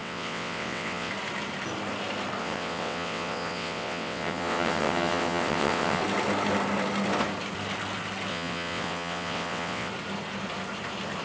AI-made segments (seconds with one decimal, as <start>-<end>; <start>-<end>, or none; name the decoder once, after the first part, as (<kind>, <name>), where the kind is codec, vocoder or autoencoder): 0.0-1.1 (vocoder, WaveNeXt); 2.4-6.0; 8.3-9.9